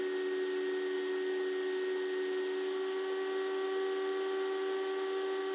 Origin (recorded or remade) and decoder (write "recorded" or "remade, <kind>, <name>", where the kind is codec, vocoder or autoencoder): recorded